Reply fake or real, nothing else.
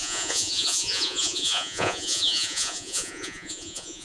fake